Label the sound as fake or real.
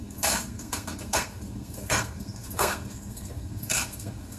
fake